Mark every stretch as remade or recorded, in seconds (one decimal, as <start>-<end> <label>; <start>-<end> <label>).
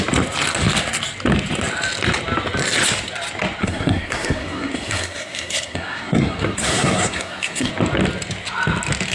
0.0-3.6 recorded; 3.6-7.7 remade; 7.7-9.1 recorded